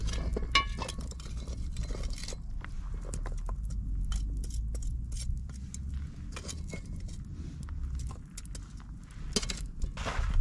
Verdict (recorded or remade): recorded